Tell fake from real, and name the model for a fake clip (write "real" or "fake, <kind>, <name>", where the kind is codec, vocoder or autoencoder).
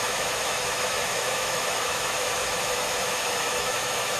fake, autoencoder, DAC-VAE